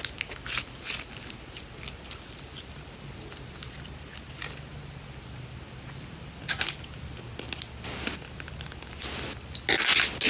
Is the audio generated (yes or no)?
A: no